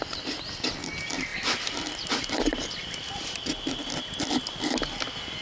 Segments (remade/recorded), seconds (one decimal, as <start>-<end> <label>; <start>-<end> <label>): 0.0-5.4 recorded